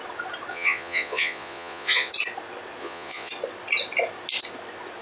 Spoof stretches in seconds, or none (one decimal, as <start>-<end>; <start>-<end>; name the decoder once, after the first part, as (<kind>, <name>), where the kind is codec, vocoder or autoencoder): 0.5-2.1 (vocoder, Vocos); 2.8-3.3